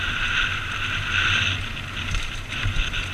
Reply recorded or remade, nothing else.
recorded